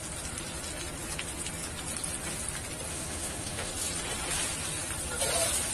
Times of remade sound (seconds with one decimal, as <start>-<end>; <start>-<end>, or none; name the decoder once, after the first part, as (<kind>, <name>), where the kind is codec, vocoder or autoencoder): 2.9-3.7 (autoencoder, DAC-VAE)